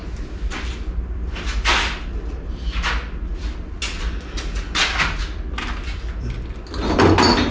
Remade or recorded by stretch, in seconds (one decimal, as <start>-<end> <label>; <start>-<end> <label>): 0.0-7.5 recorded